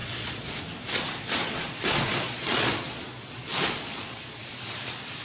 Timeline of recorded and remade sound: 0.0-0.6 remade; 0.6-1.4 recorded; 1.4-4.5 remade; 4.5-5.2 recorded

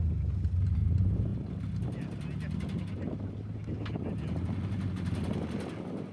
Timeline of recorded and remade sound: 0.0-6.1 recorded